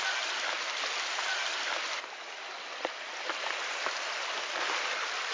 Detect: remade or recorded recorded